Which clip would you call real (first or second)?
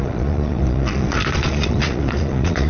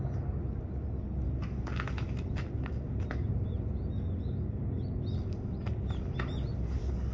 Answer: second